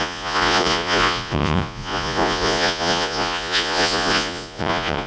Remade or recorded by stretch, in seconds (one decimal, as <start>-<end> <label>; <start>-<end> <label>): 0.0-5.1 remade